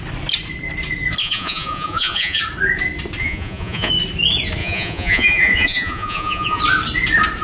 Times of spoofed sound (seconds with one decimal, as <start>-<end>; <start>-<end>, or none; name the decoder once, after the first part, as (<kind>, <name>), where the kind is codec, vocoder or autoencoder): 1.2-2.4 (vocoder, Vocos); 3.2-3.9; 4.6-6.6

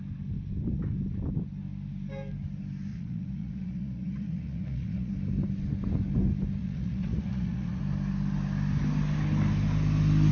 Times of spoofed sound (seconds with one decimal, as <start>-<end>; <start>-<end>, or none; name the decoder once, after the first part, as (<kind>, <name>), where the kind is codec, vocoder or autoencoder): 2.9-5.1 (vocoder, Vocos); 6.6-7.8

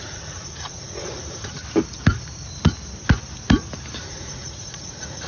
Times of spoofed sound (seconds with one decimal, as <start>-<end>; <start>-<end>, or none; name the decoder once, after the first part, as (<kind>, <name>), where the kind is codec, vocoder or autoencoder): 0.0-1.6 (vocoder, Vocos); 4.0-5.3

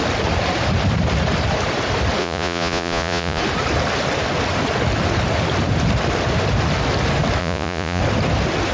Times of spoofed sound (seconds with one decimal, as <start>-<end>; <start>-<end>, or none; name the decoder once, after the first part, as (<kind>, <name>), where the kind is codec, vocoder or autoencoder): 2.2-3.4 (vocoder, Vocos); 7.4-8.0

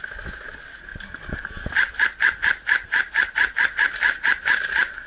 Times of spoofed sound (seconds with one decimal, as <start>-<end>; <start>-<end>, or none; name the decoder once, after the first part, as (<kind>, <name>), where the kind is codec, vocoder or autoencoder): none